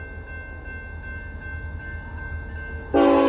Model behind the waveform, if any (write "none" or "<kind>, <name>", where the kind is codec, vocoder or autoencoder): none